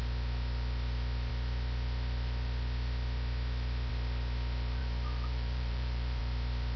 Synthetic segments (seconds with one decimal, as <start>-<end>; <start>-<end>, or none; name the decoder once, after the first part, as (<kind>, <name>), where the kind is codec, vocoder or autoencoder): 4.8-6.2 (vocoder, BigVGAN v2)